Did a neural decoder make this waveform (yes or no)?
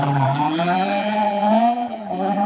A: yes